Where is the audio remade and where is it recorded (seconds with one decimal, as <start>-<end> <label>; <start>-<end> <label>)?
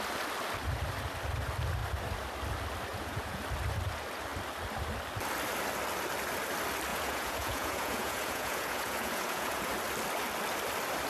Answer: 0.0-2.9 recorded; 2.9-3.4 remade; 3.4-6.9 recorded; 6.9-9.7 remade; 9.7-11.1 recorded